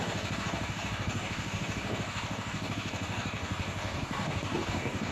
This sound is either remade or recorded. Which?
remade